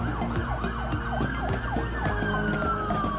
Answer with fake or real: real